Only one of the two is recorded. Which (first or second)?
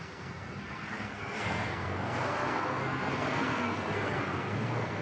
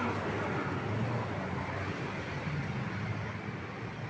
second